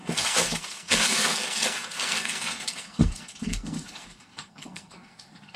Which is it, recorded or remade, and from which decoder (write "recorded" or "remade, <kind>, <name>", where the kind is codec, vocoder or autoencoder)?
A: remade, codec, SNAC